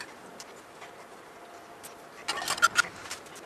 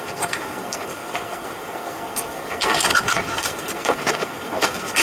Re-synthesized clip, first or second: second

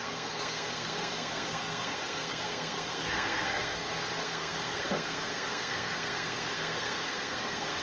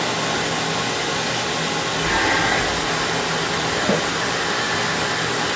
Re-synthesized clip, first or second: first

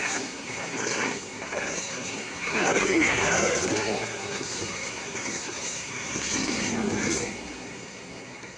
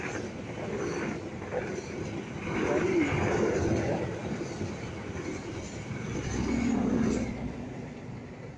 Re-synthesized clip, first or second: first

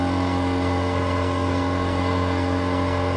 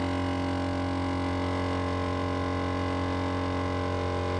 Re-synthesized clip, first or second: first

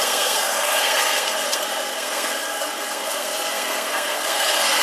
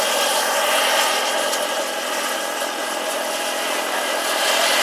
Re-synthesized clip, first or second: first